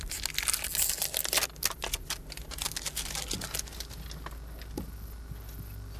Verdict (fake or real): real